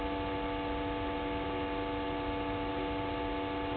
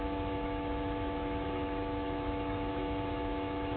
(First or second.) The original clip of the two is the first